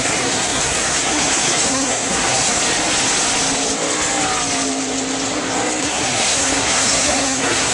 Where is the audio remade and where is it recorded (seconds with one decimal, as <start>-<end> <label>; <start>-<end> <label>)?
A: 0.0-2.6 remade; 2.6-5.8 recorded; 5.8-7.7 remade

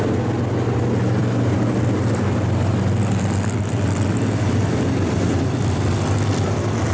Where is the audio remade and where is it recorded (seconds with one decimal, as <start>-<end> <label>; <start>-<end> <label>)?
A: 0.0-6.9 recorded

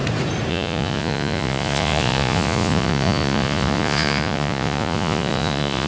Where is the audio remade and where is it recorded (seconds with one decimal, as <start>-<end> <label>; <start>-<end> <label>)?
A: 0.0-0.5 recorded; 0.5-5.9 remade